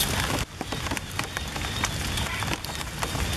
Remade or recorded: recorded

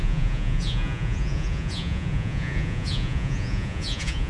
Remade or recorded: remade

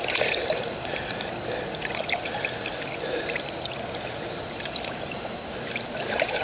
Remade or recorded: remade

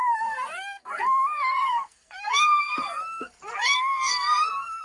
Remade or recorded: remade